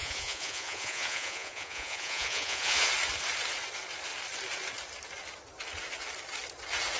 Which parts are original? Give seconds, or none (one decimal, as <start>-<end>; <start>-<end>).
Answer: 2.9-7.0